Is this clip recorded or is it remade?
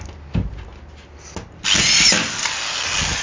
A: recorded